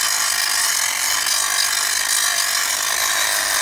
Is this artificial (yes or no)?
no